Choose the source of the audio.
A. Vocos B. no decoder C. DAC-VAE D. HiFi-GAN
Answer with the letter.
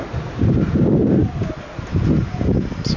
B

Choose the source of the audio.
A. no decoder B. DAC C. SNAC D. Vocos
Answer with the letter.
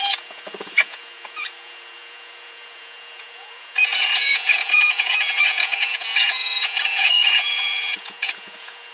D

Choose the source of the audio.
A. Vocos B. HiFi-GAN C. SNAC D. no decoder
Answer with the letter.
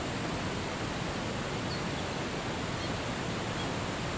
D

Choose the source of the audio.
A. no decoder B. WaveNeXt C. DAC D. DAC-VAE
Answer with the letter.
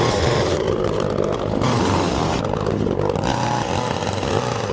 A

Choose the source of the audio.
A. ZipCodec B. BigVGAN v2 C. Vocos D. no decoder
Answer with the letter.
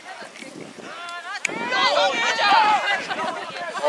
D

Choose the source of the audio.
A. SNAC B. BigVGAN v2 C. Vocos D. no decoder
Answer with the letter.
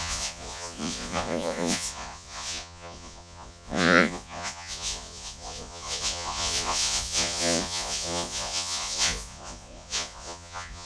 C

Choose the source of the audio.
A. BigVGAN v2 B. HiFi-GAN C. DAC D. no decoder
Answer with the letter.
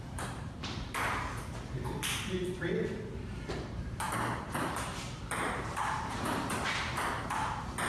A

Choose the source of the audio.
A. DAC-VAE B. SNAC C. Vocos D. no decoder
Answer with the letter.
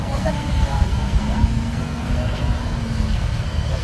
B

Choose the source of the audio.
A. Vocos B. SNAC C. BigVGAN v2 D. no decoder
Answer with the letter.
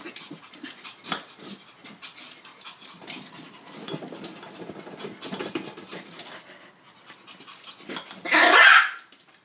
D